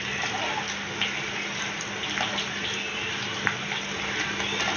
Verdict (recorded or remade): recorded